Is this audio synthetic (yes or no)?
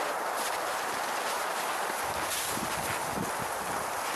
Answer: no